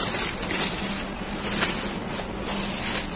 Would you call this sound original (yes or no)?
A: yes